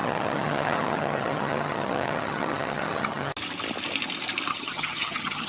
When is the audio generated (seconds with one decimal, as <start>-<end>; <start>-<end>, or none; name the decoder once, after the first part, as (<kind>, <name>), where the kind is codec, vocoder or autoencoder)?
0.0-3.3 (vocoder, HiFi-GAN); 4.5-5.5